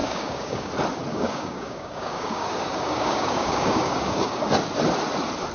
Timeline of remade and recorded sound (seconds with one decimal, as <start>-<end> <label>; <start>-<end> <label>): 0.0-0.7 remade; 0.7-1.1 recorded; 1.1-4.4 remade; 4.4-5.5 recorded